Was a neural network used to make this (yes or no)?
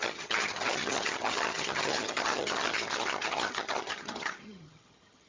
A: yes